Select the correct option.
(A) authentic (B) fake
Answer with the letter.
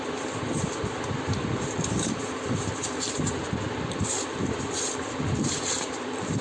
B